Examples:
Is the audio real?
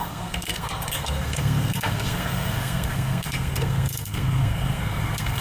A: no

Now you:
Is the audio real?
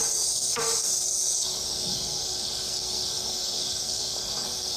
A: no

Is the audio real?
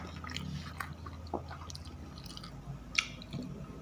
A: yes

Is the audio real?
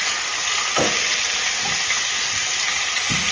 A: yes